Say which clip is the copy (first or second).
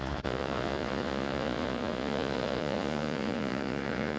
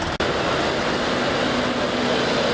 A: first